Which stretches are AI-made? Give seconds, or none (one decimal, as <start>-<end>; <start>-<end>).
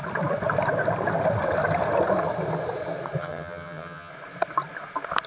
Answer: 3.2-4.1